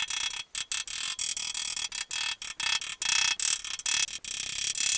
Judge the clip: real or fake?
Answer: real